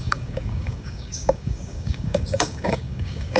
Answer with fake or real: fake